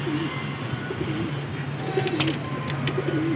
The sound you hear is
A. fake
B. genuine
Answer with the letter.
B